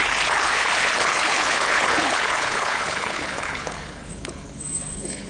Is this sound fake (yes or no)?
yes